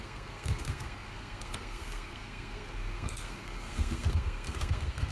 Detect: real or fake fake